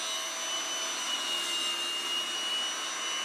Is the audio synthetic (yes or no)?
no